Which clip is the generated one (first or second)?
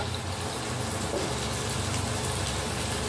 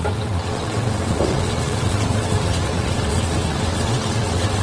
second